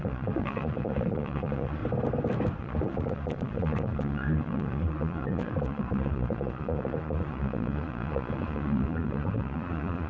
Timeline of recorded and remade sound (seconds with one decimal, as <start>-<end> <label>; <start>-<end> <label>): 0.0-1.8 remade; 1.8-2.6 recorded; 2.6-10.1 remade